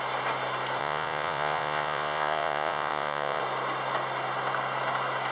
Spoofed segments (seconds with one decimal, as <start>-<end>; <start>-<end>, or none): 0.8-3.4